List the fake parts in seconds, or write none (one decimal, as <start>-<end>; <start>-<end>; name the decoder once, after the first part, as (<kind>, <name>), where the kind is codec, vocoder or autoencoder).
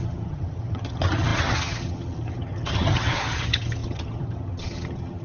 0.0-5.2 (vocoder, HiFi-GAN)